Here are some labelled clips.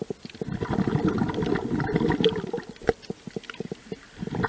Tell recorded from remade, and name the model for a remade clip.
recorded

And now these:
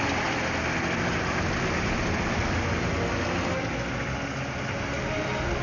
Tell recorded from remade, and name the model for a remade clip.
recorded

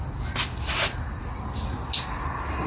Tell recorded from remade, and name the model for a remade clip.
recorded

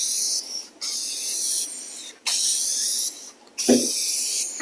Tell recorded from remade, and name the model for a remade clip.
recorded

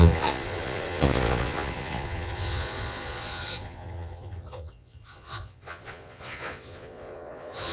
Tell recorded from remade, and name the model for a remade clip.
remade, vocoder, Vocos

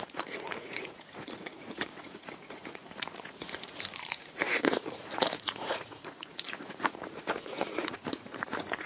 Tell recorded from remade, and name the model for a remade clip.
remade, vocoder, Vocos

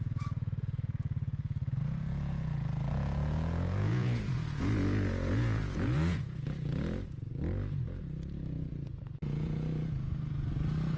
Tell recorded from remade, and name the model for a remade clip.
remade, vocoder, Vocos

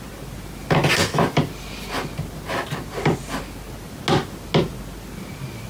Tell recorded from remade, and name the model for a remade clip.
recorded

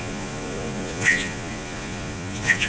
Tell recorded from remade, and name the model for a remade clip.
remade, vocoder, Vocos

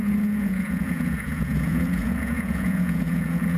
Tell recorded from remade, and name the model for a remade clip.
remade, vocoder, Vocos